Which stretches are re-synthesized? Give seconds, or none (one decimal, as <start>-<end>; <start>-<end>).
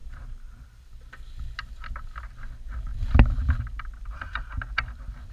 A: 0.0-0.9; 2.9-5.3